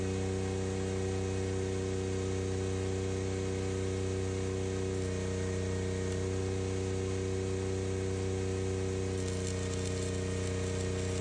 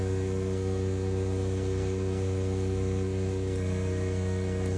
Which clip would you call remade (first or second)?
second